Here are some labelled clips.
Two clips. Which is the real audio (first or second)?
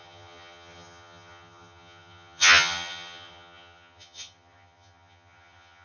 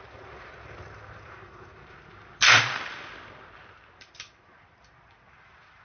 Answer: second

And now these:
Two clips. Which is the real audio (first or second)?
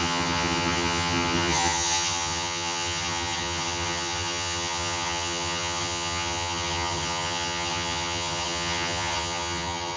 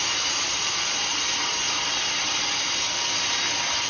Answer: second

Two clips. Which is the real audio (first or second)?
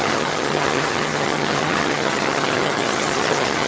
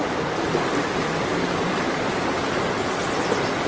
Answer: second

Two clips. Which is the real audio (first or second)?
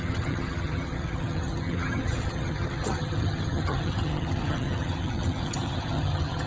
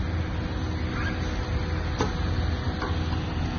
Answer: second